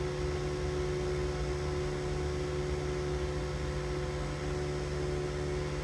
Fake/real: real